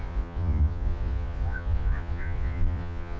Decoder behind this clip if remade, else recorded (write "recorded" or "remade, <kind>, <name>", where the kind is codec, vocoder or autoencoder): remade, vocoder, Vocos